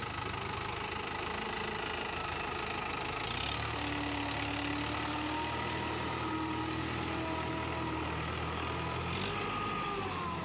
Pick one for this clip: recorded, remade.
recorded